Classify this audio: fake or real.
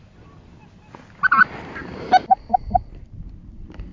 real